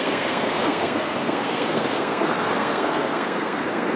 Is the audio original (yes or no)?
no